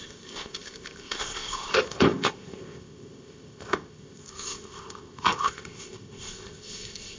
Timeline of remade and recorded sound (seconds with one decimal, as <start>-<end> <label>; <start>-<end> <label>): 0.0-7.2 remade